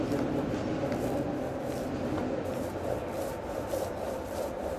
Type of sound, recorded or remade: recorded